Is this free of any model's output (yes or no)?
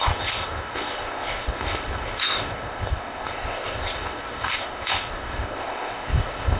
no